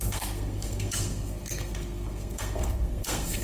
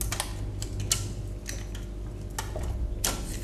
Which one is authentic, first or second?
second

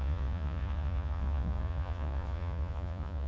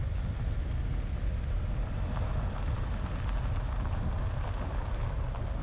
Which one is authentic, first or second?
second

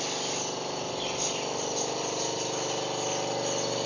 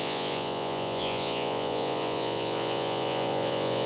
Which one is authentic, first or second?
first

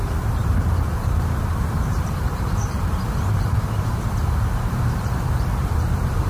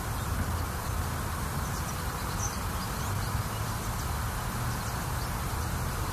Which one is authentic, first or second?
second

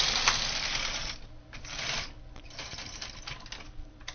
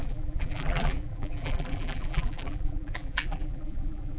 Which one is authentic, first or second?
first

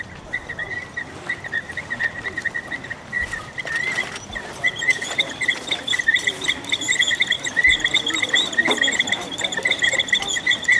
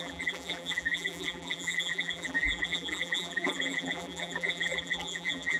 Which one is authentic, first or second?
first